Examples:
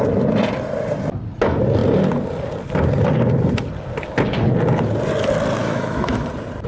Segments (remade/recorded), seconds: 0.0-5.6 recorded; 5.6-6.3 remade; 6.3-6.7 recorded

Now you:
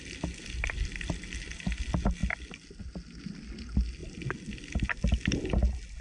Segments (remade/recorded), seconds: 0.0-6.0 recorded